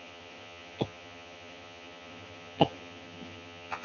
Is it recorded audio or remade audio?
remade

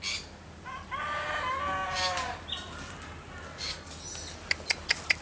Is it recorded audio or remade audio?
recorded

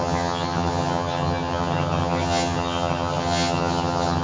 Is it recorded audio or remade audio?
remade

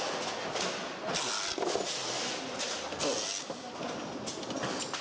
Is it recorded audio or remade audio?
recorded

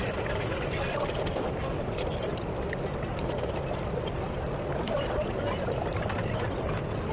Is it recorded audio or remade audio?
recorded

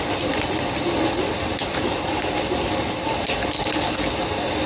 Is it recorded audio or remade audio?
recorded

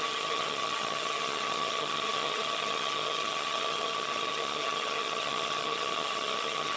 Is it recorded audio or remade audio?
remade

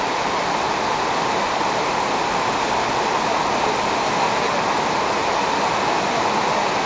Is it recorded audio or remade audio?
recorded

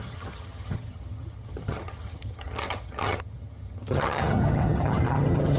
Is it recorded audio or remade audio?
remade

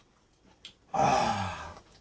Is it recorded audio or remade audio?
recorded